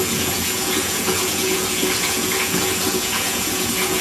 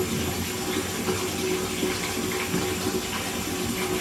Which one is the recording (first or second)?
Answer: second